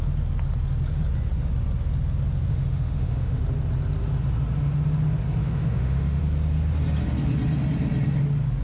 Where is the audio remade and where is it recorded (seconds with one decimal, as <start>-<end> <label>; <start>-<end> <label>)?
0.0-2.5 recorded; 2.5-3.4 remade; 3.4-5.4 recorded; 5.4-6.2 remade; 6.2-8.6 recorded